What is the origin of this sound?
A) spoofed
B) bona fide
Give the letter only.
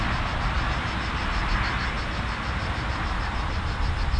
B